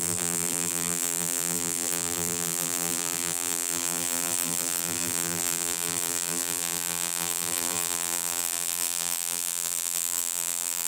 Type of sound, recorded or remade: remade